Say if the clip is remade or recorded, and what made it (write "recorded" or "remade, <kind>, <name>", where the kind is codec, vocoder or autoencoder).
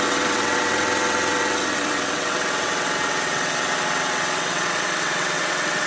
remade, vocoder, WaveNeXt